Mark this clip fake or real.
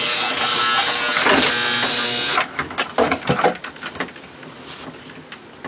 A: real